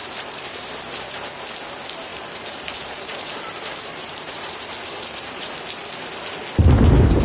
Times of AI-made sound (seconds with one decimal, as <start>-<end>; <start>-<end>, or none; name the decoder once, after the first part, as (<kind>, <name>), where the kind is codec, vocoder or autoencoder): 0.0-0.7 (vocoder, BigVGAN v2); 2.1-5.5